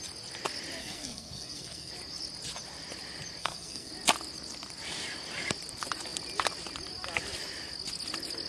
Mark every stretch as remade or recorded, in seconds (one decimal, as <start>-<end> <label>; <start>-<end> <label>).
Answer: 0.0-0.8 recorded; 0.8-1.9 remade; 1.9-3.4 recorded; 3.4-3.9 remade; 3.9-8.5 recorded